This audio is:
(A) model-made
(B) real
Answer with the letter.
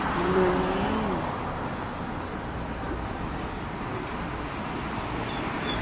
B